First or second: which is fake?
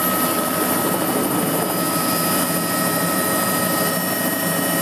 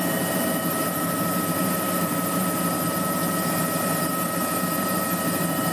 second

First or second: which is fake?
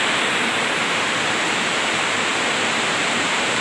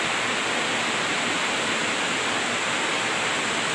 first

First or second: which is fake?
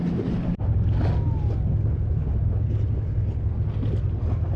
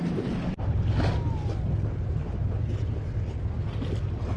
second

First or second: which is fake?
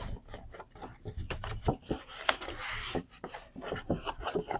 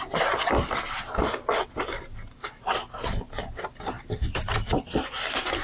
first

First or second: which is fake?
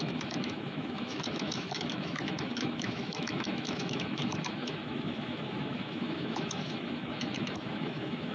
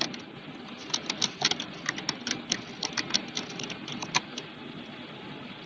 first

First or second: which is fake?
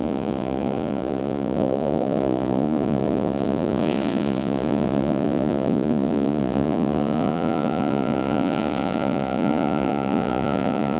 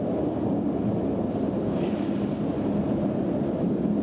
first